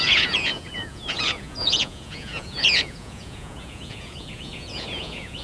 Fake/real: fake